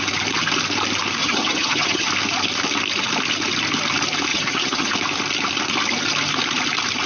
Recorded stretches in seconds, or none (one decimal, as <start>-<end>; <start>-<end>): 0.0-1.2; 2.1-4.3; 4.9-7.1